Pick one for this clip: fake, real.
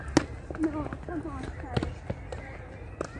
real